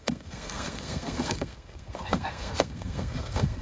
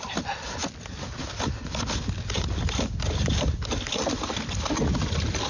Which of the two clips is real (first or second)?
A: second